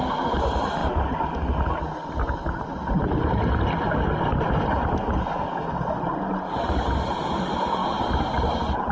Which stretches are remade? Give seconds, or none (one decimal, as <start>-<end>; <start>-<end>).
7.8-8.9